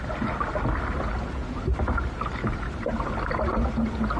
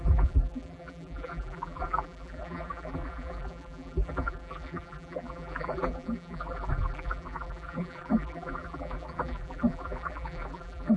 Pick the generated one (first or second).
second